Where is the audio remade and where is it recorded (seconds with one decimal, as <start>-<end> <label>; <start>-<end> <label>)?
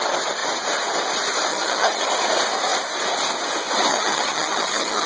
0.0-1.5 recorded; 1.5-2.1 remade; 2.1-3.9 recorded; 3.9-5.1 remade